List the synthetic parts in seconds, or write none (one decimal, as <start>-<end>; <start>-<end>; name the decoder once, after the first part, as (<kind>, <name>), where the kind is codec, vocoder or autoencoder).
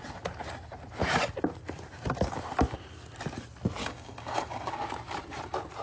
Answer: 3.8-4.7 (codec, DAC)